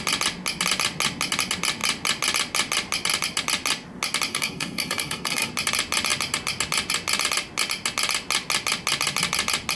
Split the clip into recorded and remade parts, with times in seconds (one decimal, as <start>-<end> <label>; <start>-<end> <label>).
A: 0.0-4.3 recorded; 4.3-5.5 remade; 5.5-9.7 recorded